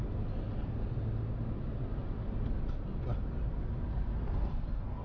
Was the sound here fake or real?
real